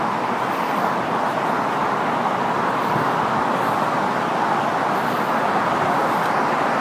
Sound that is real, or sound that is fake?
real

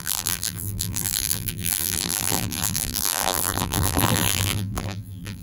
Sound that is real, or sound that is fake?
fake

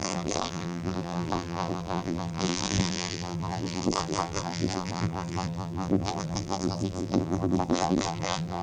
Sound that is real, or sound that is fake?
fake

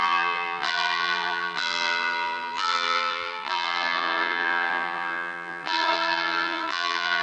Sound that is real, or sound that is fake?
fake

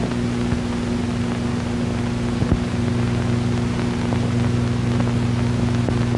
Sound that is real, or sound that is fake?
real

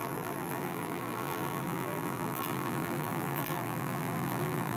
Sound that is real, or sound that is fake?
fake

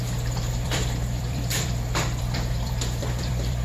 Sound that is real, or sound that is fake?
fake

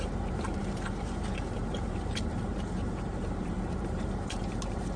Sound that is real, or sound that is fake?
fake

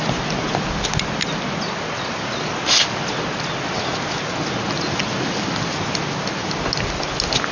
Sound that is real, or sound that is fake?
real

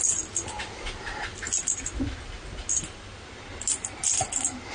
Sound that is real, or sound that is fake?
real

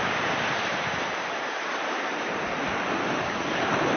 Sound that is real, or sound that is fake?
fake